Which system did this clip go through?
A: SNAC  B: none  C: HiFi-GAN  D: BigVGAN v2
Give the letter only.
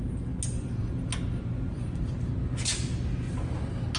B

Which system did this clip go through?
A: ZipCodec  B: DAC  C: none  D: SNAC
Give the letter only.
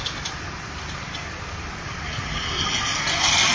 C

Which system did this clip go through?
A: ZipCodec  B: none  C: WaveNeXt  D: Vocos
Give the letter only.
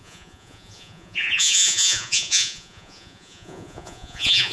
D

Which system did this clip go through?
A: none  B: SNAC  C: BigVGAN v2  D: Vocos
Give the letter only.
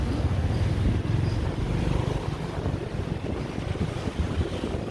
A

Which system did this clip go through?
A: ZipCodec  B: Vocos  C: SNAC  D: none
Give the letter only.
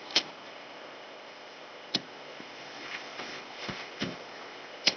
A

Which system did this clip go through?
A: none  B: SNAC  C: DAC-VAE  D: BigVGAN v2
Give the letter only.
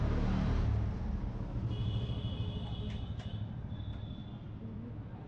A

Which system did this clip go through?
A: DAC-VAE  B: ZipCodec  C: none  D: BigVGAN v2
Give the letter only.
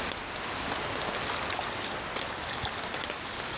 C